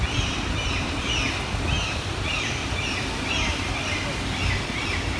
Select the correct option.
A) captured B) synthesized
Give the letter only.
A